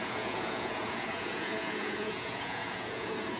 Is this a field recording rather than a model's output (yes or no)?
no